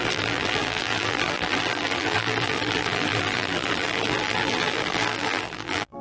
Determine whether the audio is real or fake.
fake